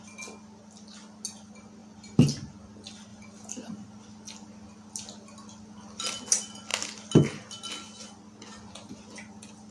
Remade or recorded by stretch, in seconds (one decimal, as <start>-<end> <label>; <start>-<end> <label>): 0.0-9.7 recorded

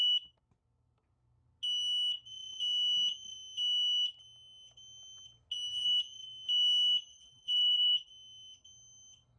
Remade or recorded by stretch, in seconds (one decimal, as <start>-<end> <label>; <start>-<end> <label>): 0.0-7.1 recorded; 7.1-8.1 remade; 8.1-9.4 recorded

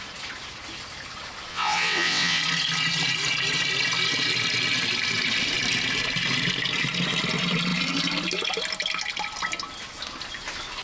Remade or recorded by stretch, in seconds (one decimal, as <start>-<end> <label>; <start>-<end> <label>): 0.0-1.5 recorded; 1.5-2.4 remade; 2.4-10.8 recorded

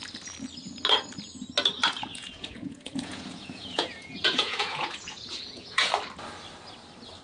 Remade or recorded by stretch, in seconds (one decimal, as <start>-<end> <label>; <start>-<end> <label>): 0.0-2.1 recorded; 2.1-5.9 remade; 5.9-7.2 recorded